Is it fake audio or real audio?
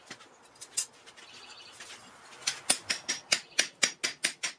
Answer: real